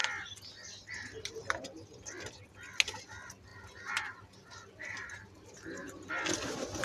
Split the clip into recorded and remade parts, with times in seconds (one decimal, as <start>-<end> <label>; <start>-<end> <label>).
0.0-3.5 recorded; 3.5-6.1 remade; 6.1-6.8 recorded